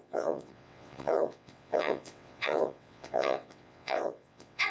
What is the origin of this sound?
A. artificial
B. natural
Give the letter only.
A